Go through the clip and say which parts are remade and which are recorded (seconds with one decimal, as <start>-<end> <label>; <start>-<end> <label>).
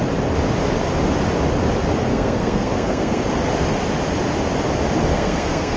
0.0-2.1 recorded; 2.1-3.2 remade; 3.2-5.1 recorded; 5.1-5.8 remade